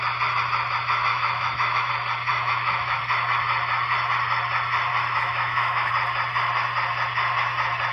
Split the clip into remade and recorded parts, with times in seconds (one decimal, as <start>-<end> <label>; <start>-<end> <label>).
0.0-1.1 recorded; 1.1-1.9 remade; 1.9-2.3 recorded; 2.3-3.0 remade; 3.0-4.9 recorded; 4.9-5.9 remade; 5.9-7.9 recorded